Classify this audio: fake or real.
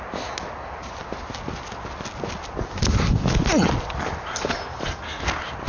real